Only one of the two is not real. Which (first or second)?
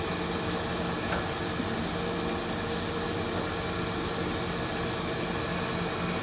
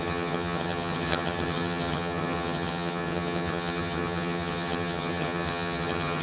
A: second